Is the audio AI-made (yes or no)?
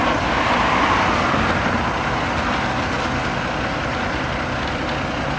no